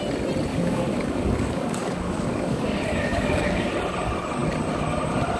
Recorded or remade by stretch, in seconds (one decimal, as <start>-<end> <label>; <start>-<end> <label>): 0.0-0.5 recorded; 0.5-3.7 remade; 3.7-5.4 recorded